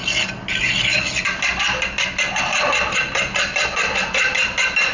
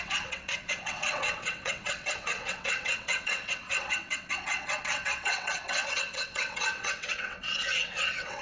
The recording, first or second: first